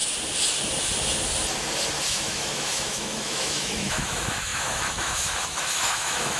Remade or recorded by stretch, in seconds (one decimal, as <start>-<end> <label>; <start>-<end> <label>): 0.0-2.0 recorded; 2.0-6.4 remade